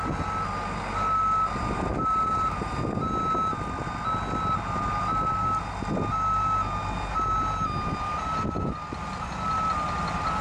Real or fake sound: real